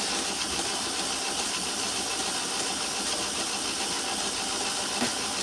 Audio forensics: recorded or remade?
recorded